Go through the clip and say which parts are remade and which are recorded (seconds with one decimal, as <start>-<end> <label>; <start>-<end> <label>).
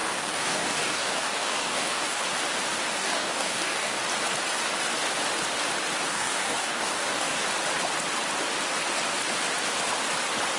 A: 0.0-2.2 remade; 2.2-3.0 recorded; 3.0-4.0 remade; 4.0-6.1 recorded; 6.1-7.4 remade; 7.4-10.6 recorded